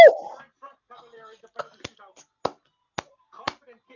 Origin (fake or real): real